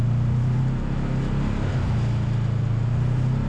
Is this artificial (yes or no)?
no